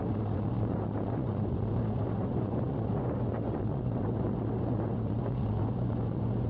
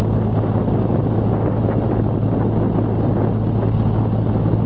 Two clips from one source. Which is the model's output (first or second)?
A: first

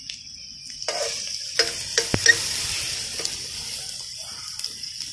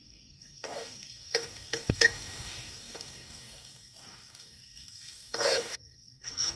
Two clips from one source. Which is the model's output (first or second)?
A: second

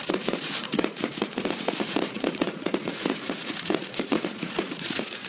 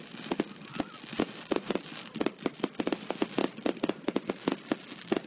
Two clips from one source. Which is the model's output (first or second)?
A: first